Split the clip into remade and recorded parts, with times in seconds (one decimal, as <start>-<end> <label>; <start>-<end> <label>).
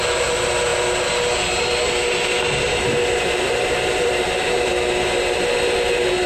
0.0-6.3 recorded